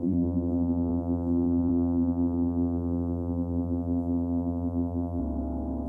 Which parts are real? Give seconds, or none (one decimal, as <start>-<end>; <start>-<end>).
5.2-5.9